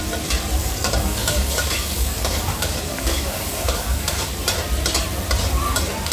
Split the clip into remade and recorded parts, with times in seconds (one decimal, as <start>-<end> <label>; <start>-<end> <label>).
0.0-0.6 recorded; 0.6-4.3 remade; 4.3-6.1 recorded